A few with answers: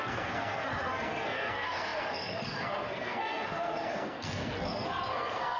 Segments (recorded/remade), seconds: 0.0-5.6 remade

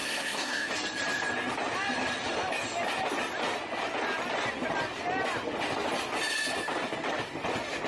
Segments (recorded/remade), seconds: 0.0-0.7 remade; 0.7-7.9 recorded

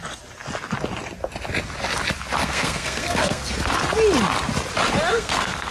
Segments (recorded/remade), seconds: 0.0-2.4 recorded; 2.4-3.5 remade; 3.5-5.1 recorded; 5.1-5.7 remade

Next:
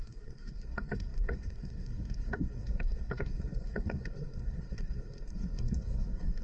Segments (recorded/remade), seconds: 0.0-6.4 remade

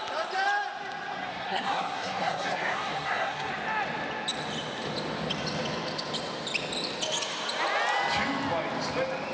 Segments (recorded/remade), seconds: 0.0-1.3 recorded; 1.3-3.5 remade; 3.5-9.3 recorded